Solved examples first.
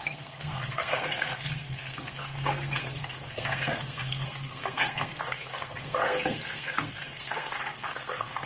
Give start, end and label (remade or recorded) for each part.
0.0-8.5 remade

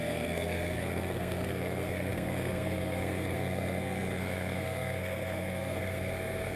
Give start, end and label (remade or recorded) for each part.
0.0-6.6 remade

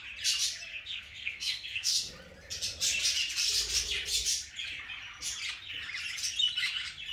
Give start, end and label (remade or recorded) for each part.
0.0-0.7 recorded; 0.7-2.1 remade; 2.1-7.1 recorded

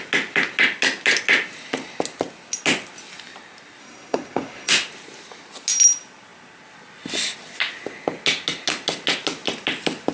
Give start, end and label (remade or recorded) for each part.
0.0-3.8 recorded; 3.8-4.7 remade; 4.7-10.1 recorded

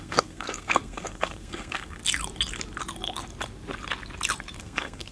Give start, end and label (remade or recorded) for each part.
0.0-2.0 remade; 2.0-4.6 recorded; 4.6-5.1 remade

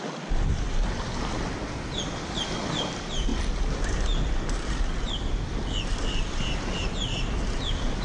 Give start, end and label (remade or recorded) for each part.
0.0-8.0 recorded

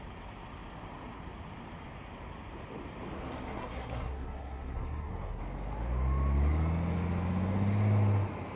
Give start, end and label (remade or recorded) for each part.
0.0-3.4 recorded; 3.4-5.4 remade; 5.4-8.6 recorded